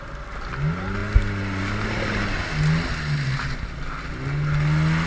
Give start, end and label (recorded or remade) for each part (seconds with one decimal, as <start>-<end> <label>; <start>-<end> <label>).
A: 0.0-5.1 recorded